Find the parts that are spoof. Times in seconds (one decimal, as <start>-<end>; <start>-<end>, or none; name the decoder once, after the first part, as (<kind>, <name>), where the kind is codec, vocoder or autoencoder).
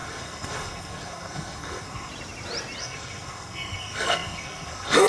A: 0.0-2.1 (codec, SNAC); 2.8-5.1